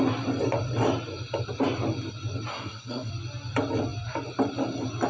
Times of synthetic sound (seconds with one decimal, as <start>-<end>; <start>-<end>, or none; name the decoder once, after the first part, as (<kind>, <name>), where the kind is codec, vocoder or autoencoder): 2.5-3.1 (codec, SNAC)